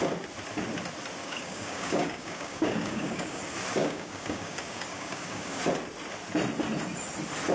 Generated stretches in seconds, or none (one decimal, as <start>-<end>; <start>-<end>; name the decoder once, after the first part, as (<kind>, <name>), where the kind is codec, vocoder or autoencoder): 1.2-3.4 (codec, DAC); 3.8-5.6